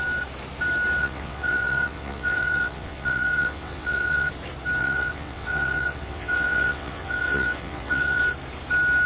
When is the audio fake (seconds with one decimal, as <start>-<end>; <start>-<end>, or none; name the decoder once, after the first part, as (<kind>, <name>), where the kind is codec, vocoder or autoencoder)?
1.0-4.3 (vocoder, WaveNeXt); 4.8-8.2